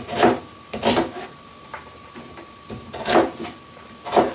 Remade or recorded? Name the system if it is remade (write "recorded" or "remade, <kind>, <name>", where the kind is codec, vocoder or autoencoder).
recorded